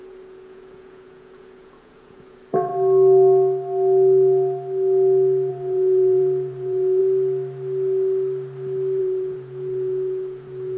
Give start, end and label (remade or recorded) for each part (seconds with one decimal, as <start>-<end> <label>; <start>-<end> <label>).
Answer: 0.0-2.7 remade; 2.7-5.5 recorded; 5.5-7.0 remade; 7.0-9.0 recorded; 9.0-10.8 remade